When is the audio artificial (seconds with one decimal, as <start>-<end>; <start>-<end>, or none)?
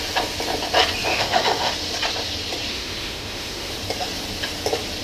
1.1-1.7; 2.7-3.7